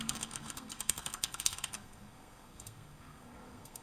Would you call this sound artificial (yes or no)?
yes